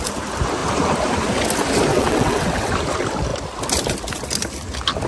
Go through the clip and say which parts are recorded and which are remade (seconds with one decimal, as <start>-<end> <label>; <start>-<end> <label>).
0.0-1.9 recorded; 1.9-2.7 remade; 2.7-5.1 recorded